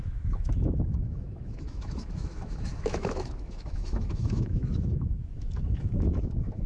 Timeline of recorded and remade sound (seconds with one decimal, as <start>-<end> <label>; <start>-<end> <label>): 0.0-6.7 remade